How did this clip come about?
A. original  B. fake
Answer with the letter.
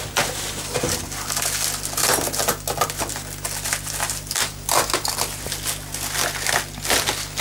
A